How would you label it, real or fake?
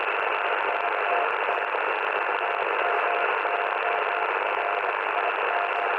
real